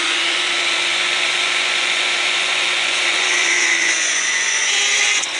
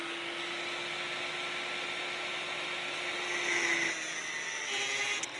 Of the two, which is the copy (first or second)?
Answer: first